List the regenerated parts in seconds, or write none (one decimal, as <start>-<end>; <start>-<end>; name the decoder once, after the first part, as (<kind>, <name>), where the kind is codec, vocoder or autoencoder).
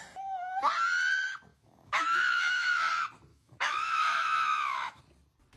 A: 1.5-2.9 (autoencoder, DAC-VAE); 3.3-5.0